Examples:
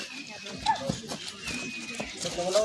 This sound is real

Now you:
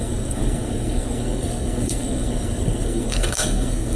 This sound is fake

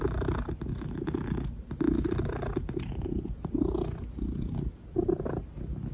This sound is real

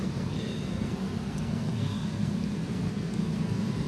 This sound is fake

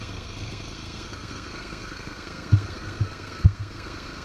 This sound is fake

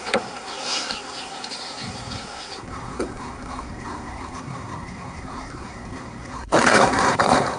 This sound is fake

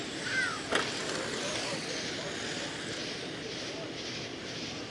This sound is real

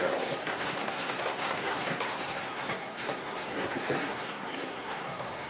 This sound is fake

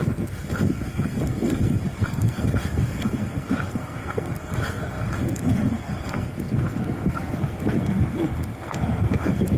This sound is fake